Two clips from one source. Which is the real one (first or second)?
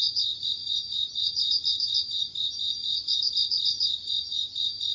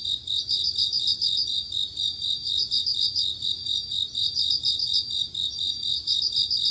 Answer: second